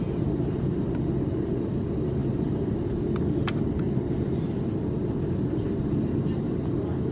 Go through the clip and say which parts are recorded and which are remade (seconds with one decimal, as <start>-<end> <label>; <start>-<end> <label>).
0.0-7.1 recorded